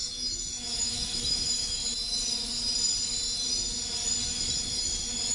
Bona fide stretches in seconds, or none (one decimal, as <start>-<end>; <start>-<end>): 1.8-5.3